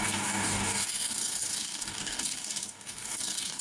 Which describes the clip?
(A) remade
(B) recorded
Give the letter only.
A